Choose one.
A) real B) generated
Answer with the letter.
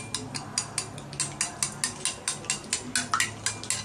A